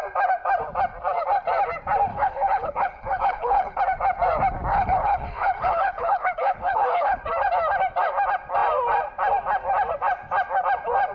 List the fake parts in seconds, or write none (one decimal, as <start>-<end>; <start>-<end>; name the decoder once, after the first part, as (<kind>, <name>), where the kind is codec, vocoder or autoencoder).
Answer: 2.1-3.8 (codec, HILCodec); 4.7-7.2